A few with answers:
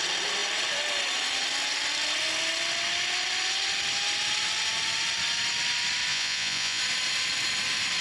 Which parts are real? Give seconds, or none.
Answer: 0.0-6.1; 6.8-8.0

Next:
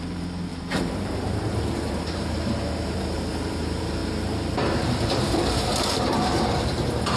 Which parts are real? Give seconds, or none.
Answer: none